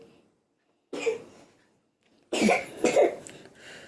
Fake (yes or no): no